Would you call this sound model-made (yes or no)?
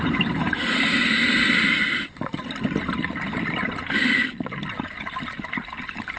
no